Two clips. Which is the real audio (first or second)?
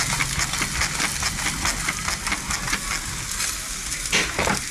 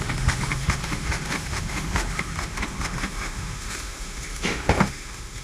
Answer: first